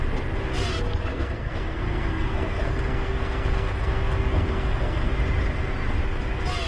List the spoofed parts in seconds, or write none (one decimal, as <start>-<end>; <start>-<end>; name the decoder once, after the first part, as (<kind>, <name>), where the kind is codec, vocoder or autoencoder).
1.1-5.1 (codec, SNAC)